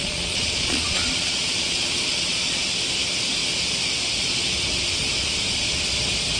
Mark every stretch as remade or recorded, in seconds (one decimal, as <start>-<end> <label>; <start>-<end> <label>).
0.0-2.6 remade; 2.6-6.4 recorded